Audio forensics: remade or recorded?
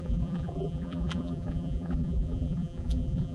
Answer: remade